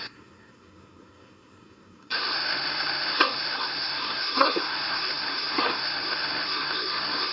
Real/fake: fake